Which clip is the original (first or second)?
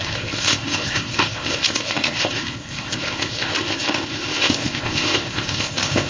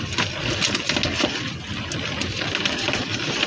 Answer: second